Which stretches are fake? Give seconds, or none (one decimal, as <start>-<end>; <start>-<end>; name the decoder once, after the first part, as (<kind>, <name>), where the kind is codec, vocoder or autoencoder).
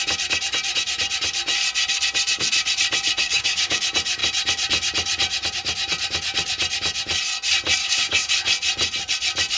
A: 3.2-3.8 (codec, DAC); 7.8-8.3